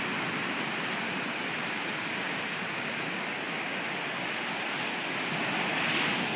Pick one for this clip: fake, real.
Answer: real